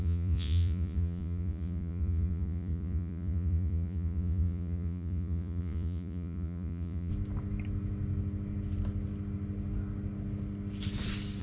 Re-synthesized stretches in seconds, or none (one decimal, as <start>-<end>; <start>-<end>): 0.0-7.1